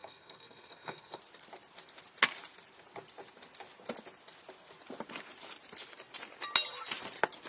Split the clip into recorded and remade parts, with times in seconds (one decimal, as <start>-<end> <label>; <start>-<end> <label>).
0.0-1.2 remade; 1.2-7.5 recorded